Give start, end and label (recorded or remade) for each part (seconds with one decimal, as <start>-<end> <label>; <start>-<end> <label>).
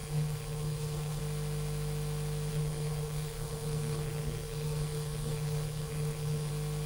0.0-1.2 remade; 1.2-2.5 recorded; 2.5-6.5 remade; 6.5-6.9 recorded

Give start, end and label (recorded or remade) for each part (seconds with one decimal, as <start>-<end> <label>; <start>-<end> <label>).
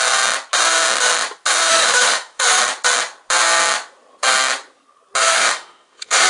0.0-1.7 recorded; 1.7-2.6 remade; 2.6-5.2 recorded; 5.2-6.3 remade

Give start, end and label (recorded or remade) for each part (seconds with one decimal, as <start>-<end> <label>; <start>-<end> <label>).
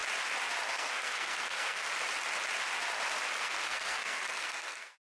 0.0-0.7 recorded; 0.7-1.9 remade; 1.9-3.4 recorded; 3.4-5.0 remade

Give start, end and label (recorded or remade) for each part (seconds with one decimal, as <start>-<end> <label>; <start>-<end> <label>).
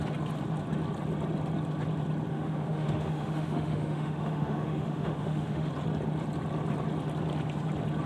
0.0-2.3 recorded; 2.3-5.7 remade; 5.7-8.1 recorded